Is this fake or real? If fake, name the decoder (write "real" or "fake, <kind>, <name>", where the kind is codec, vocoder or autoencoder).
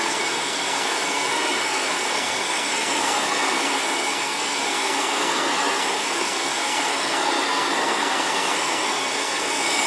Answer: fake, codec, SNAC